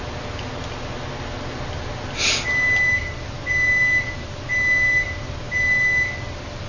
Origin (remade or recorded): recorded